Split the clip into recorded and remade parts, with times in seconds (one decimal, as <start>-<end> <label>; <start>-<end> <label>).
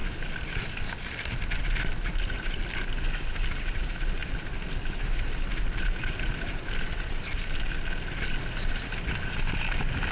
0.0-10.1 recorded